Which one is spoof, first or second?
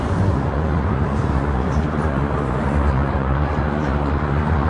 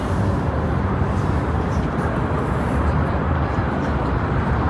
first